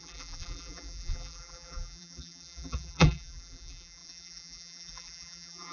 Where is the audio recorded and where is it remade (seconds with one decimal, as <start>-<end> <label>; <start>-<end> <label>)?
0.0-5.7 remade